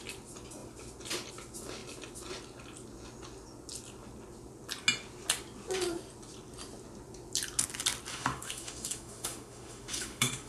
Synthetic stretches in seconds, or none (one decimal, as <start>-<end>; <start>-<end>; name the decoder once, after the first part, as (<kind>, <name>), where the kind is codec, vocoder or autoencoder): 8.1-10.5 (autoencoder, DAC-VAE)